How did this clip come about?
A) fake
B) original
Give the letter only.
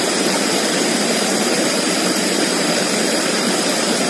A